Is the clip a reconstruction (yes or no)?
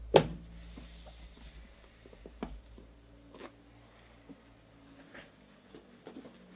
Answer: no